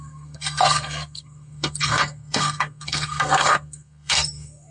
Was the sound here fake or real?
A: fake